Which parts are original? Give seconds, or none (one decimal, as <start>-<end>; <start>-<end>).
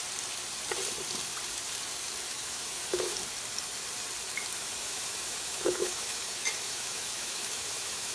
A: 0.0-2.3; 3.1-4.8